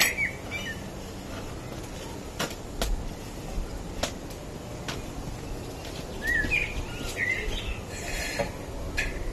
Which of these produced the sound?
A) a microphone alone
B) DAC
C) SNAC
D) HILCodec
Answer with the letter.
A